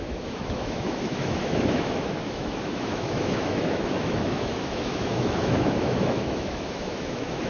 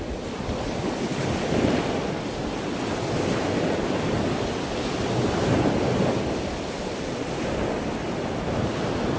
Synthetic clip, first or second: first